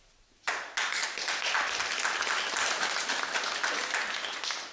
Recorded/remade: recorded